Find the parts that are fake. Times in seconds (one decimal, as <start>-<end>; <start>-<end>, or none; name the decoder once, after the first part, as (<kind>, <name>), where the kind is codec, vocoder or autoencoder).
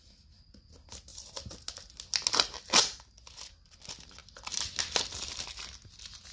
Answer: none